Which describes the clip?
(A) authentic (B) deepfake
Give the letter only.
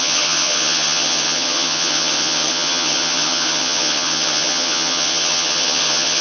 B